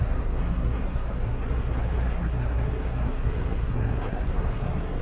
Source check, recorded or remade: remade